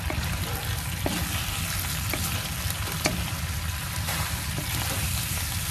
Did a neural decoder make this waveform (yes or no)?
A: no